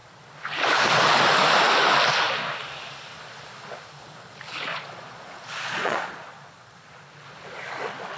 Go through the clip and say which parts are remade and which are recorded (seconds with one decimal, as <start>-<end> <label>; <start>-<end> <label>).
0.0-4.7 recorded; 4.7-6.9 remade; 6.9-8.2 recorded